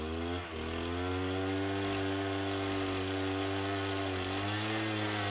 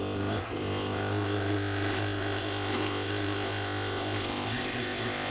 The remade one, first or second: second